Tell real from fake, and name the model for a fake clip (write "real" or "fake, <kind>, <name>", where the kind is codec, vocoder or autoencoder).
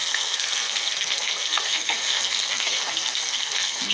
fake, codec, SNAC